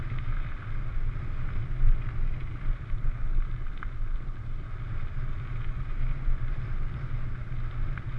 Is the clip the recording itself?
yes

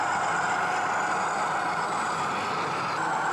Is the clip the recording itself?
yes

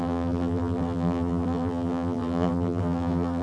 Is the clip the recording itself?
no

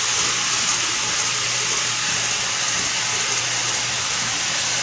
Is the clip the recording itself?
yes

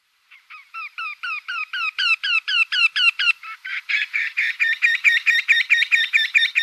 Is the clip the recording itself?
no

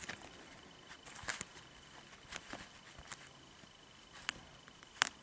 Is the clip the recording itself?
yes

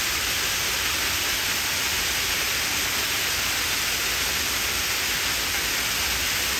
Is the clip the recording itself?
yes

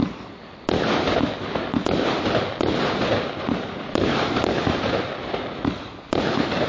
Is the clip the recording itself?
yes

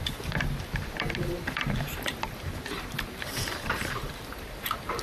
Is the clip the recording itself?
no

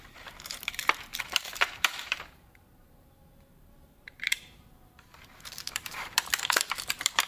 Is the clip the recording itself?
no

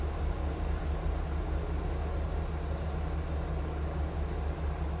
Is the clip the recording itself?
yes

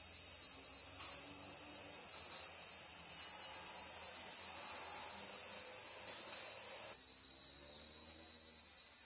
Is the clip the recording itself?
yes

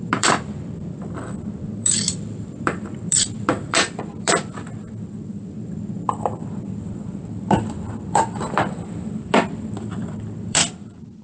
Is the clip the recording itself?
no